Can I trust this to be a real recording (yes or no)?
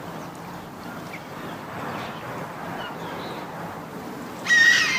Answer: yes